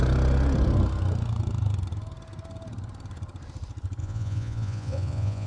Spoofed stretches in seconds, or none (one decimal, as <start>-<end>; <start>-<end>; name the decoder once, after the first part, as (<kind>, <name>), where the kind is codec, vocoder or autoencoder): 4.0-5.5 (vocoder, Vocos)